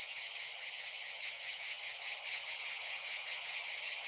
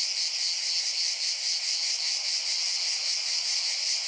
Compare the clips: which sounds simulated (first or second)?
first